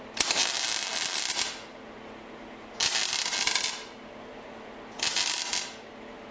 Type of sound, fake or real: real